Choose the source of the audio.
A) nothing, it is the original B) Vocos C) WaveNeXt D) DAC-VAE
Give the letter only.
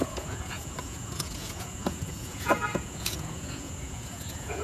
B